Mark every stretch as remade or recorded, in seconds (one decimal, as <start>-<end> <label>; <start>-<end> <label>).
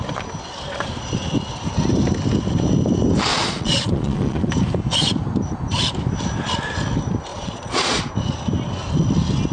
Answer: 0.0-3.3 recorded; 3.3-4.5 remade; 4.5-7.3 recorded; 7.3-8.0 remade; 8.0-9.5 recorded